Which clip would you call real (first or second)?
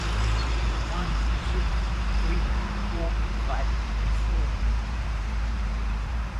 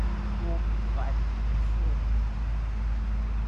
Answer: second